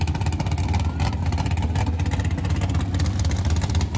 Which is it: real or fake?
real